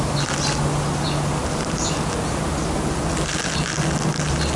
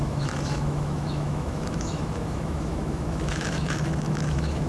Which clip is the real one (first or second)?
first